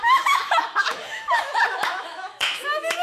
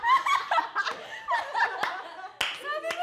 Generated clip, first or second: first